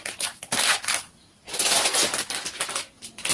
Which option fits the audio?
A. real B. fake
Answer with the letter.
A